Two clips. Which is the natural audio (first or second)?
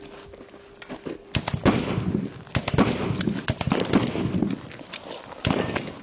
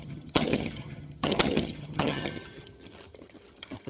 first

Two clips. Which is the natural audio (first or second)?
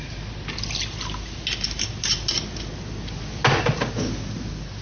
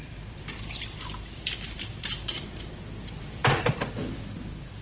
first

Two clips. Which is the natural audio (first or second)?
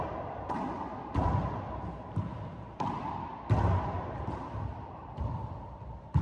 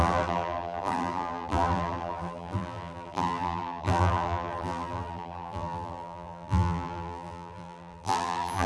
first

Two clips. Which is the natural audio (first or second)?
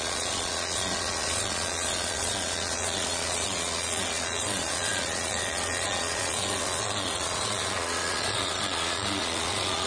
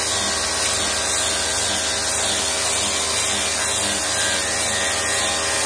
second